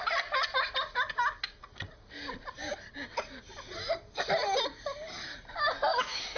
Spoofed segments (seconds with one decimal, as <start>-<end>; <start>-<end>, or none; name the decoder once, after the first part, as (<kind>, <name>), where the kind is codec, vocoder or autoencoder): 5.9-6.4 (autoencoder, DAC-VAE)